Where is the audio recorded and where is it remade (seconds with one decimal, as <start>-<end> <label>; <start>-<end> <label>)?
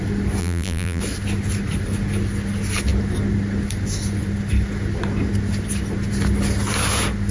0.0-0.4 recorded; 0.4-1.0 remade; 1.0-7.3 recorded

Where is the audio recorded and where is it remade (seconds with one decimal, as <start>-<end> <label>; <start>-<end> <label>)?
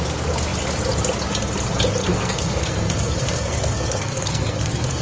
0.0-2.0 recorded; 2.0-5.0 remade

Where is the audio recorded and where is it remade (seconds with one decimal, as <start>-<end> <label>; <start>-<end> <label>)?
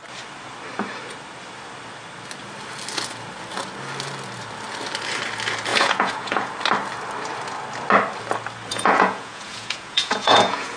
0.0-5.7 recorded; 5.7-6.5 remade; 6.5-8.7 recorded; 8.7-10.8 remade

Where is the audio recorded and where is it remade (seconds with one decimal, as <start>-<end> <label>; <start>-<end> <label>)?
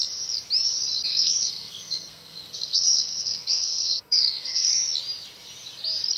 0.0-1.1 recorded; 1.1-4.7 remade; 4.7-6.2 recorded